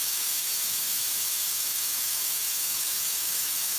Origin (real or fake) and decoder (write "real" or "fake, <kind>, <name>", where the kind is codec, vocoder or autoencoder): fake, autoencoder, DAC-VAE